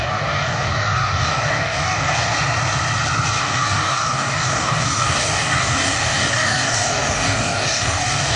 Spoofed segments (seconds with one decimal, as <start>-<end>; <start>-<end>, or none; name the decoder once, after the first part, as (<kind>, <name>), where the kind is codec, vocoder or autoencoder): 0.0-2.3 (codec, DAC); 3.4-8.4